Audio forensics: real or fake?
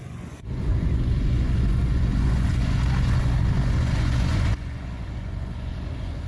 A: fake